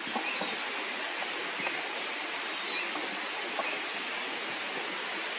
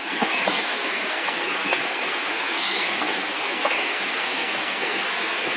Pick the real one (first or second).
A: first